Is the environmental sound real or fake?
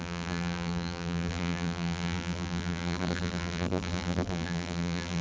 fake